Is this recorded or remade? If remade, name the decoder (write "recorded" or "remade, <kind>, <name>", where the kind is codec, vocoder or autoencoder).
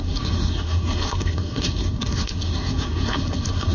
remade, codec, SNAC